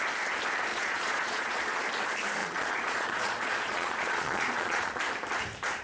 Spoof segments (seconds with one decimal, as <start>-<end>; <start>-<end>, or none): 0.7-1.7; 2.4-5.0